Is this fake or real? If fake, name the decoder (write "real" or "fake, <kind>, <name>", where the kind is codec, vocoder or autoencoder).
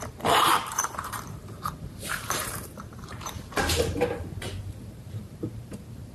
fake, vocoder, BigVGAN v2